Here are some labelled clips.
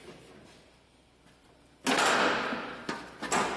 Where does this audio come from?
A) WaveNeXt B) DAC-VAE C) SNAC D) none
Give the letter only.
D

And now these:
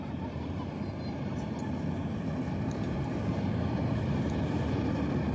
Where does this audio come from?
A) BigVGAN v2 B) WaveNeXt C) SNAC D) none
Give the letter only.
A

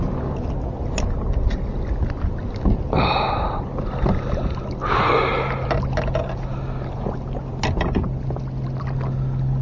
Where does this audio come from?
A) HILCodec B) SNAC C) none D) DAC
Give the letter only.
C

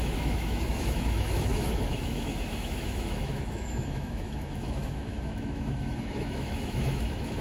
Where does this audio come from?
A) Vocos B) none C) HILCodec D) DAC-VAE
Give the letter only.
D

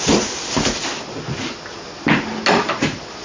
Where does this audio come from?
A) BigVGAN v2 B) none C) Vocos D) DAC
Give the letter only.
B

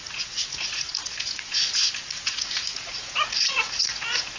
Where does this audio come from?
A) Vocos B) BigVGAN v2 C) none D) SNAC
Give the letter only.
A